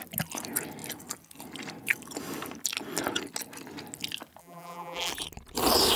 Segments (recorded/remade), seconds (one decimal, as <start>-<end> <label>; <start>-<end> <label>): 0.0-4.4 recorded; 4.4-5.1 remade; 5.1-6.0 recorded